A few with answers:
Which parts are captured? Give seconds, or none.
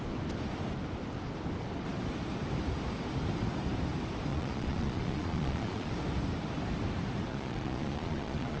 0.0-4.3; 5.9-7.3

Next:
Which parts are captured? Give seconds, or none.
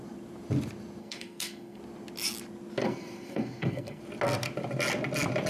0.0-1.0; 1.8-2.8; 4.0-5.5